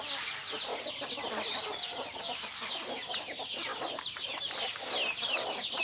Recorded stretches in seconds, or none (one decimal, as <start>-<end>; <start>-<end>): 0.0-5.8